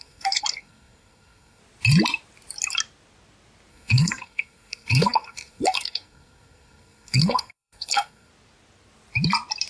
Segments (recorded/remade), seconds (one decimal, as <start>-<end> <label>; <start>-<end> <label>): 0.0-1.6 remade; 1.6-3.7 recorded; 3.7-8.3 remade; 8.3-9.7 recorded

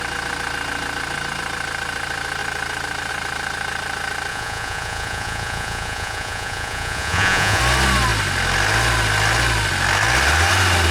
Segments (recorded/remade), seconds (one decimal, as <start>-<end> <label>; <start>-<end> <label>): 0.0-4.3 recorded; 4.3-7.6 remade; 7.6-10.9 recorded